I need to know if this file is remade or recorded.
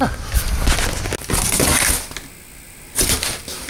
recorded